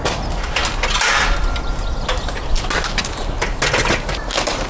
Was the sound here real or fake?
real